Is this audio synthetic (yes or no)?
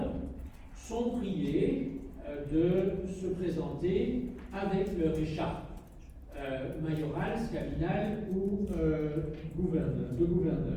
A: no